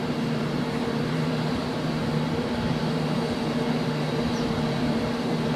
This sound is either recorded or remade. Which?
remade